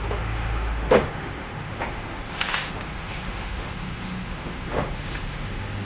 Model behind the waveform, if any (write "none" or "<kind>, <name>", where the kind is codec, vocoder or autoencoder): autoencoder, DAC-VAE